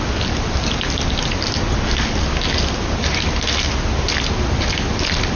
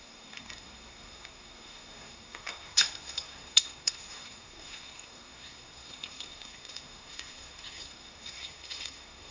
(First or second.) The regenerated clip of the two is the second